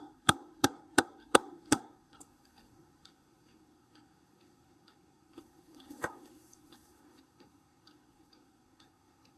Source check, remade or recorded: remade